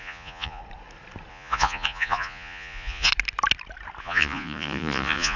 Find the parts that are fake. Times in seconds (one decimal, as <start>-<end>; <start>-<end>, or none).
0.0-0.6; 1.3-3.1; 4.0-5.4